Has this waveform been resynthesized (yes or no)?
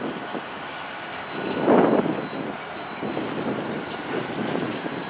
no